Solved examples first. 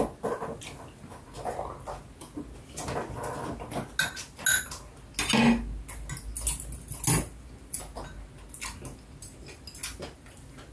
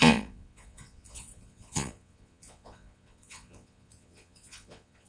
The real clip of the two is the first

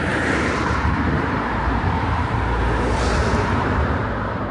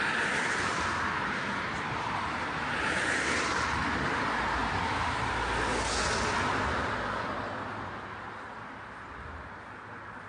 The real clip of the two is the second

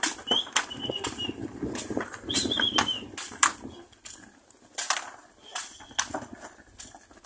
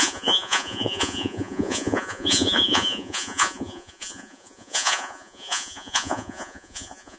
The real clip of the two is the first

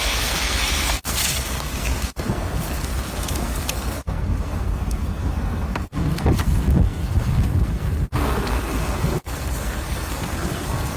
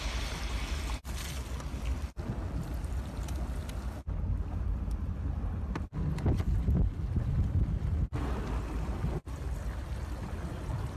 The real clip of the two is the second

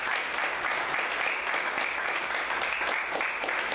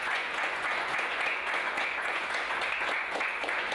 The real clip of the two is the first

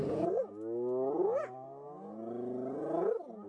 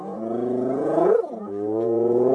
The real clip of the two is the first